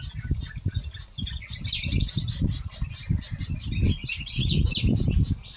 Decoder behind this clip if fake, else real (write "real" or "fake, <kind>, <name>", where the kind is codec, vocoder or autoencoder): real